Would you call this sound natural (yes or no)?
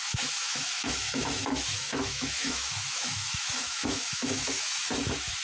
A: no